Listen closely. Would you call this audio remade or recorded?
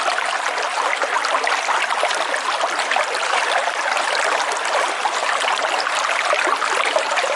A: recorded